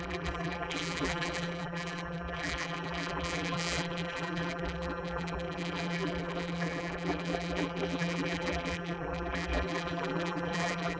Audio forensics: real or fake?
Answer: fake